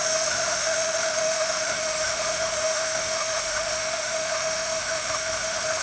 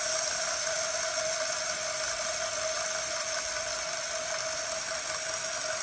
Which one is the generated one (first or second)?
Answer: first